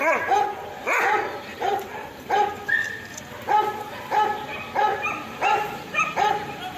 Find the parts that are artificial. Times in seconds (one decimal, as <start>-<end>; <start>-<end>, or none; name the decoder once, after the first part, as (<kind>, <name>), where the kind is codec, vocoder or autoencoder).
1.5-2.5 (vocoder, BigVGAN v2); 4.9-6.8